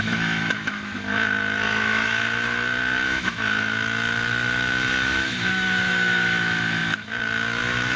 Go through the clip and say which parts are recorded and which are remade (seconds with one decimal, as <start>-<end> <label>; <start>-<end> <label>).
0.0-8.0 remade

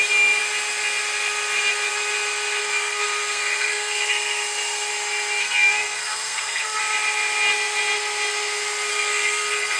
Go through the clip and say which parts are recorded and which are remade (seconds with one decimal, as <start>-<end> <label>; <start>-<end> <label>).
0.0-2.6 recorded; 2.6-4.9 remade; 4.9-5.4 recorded; 5.4-6.8 remade; 6.8-8.9 recorded; 8.9-9.8 remade